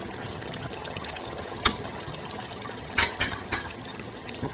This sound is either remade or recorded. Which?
remade